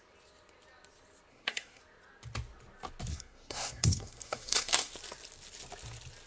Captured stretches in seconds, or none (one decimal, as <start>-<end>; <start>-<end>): 0.0-1.3; 1.8-3.1; 4.9-6.3